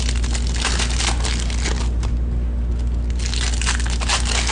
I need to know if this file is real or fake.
real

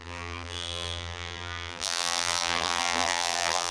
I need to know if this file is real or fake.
fake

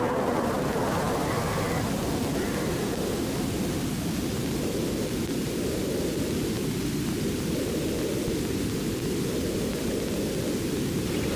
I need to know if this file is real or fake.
real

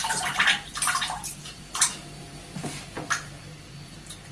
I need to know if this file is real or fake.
fake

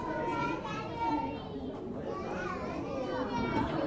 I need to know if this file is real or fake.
fake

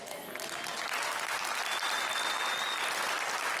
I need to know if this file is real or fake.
real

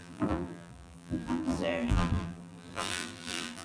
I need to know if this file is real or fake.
fake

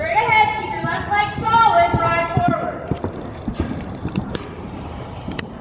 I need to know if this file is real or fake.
fake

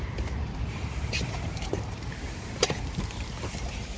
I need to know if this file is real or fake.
fake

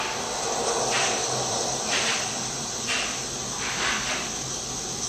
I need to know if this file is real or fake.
fake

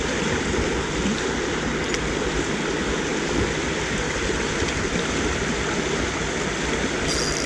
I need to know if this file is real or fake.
real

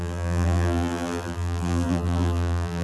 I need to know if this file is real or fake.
fake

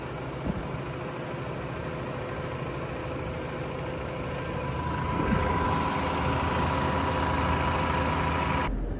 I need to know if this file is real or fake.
real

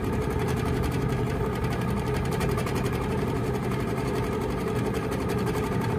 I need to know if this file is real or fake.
fake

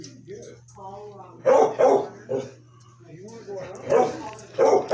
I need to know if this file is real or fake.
real